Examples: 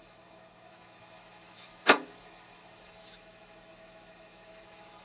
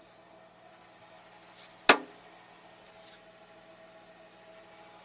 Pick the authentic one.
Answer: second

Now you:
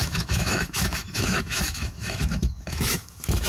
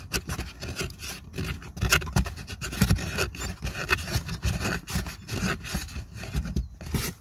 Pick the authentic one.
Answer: second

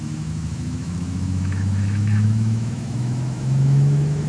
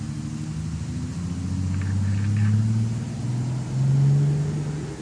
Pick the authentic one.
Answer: second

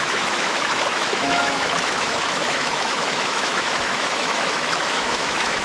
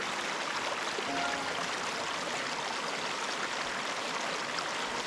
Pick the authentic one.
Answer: second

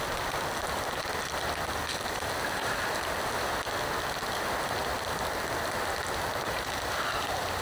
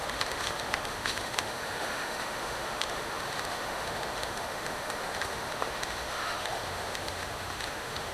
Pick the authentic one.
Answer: first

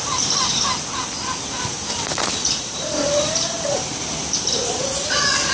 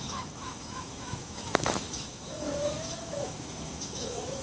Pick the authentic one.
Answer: first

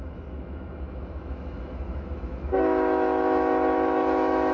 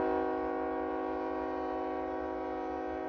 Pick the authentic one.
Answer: second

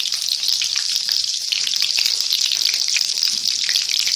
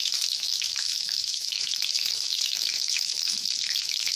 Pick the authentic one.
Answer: first